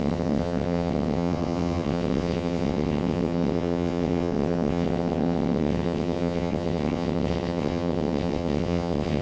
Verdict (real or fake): fake